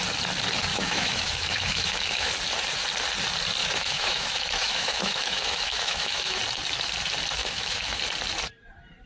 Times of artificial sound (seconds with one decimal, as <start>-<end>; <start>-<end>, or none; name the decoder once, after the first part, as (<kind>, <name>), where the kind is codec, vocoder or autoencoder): 0.7-2.3 (autoencoder, DAC-VAE); 3.6-6.4; 7.4-8.0